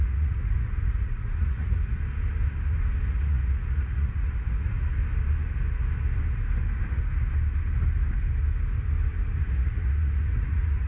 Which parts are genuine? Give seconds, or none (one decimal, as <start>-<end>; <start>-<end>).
1.8-3.1; 5.0-9.4